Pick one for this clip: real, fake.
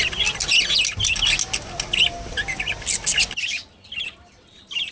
real